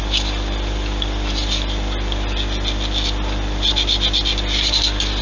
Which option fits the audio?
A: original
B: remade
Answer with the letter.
A